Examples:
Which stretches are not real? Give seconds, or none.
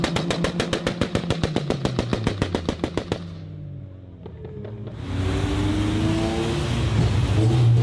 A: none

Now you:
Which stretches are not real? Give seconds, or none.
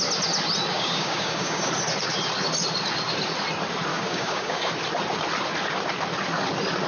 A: 0.7-1.7 (codec, DAC); 3.9-4.7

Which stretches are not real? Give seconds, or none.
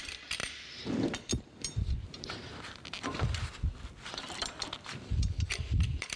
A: 0.0-6.2 (vocoder, BigVGAN v2)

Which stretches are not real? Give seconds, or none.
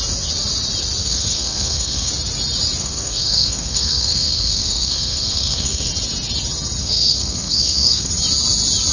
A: 1.0-2.1 (codec, SNAC); 2.8-5.9; 6.8-8.1